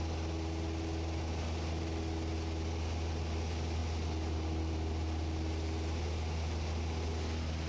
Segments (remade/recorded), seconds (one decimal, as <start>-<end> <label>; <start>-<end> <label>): 0.0-7.7 recorded